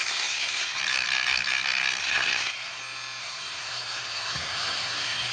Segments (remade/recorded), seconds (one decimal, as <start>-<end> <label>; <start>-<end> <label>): 0.0-0.8 remade; 0.8-2.0 recorded; 2.0-2.8 remade; 2.8-3.2 recorded; 3.2-5.3 remade